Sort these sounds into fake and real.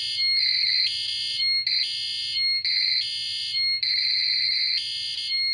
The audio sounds real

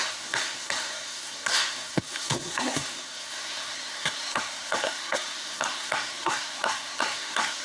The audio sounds fake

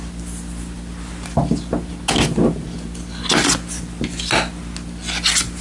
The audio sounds real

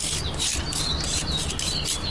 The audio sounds real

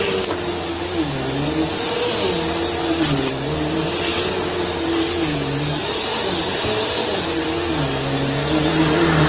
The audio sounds real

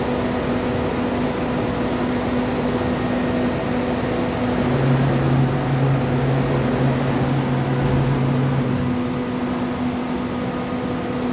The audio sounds real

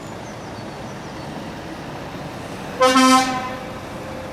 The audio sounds real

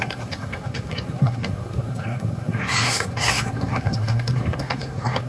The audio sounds fake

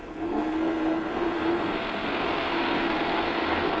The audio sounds fake